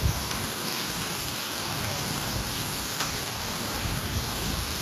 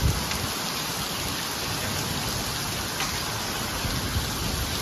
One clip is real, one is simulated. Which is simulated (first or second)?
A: first